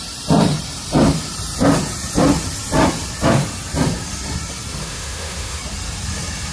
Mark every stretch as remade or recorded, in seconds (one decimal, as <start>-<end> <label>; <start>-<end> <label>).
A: 0.0-4.8 recorded; 4.8-5.6 remade; 5.6-6.5 recorded